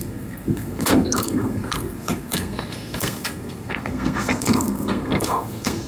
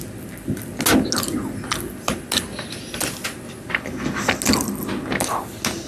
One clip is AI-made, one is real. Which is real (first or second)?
second